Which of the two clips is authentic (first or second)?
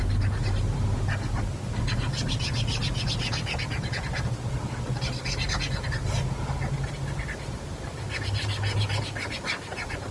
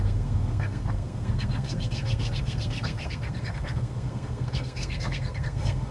first